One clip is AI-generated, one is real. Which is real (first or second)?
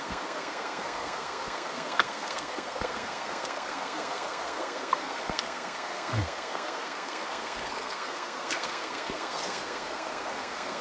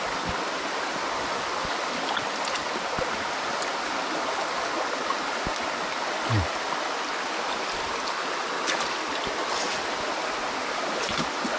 second